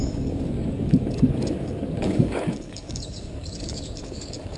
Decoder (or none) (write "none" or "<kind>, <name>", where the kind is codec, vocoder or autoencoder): codec, DAC